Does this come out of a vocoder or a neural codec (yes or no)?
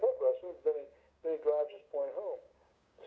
yes